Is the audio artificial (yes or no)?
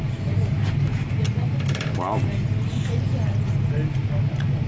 no